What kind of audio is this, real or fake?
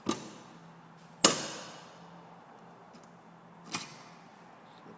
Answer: real